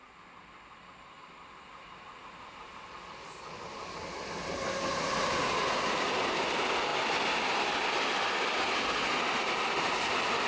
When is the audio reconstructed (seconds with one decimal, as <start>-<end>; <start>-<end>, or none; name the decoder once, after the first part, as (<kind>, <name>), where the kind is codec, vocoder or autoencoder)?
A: none